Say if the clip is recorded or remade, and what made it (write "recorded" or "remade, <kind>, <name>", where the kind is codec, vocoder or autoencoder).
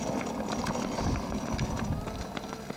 recorded